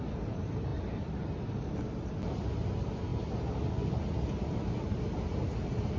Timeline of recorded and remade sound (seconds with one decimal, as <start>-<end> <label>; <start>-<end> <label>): 0.0-6.0 recorded